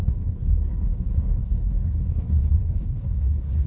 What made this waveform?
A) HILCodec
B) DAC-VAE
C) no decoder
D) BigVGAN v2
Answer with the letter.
A